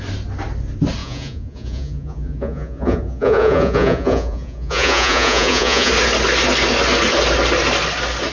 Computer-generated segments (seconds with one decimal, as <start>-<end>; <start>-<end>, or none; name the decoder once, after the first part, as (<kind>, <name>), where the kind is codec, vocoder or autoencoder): 1.0-5.9 (vocoder, Vocos)